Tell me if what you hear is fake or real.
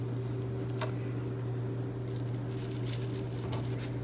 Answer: real